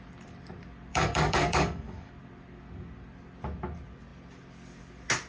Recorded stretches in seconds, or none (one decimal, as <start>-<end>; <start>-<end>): 0.0-0.9; 2.1-5.3